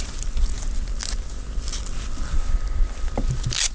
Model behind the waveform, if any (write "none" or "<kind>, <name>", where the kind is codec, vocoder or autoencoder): none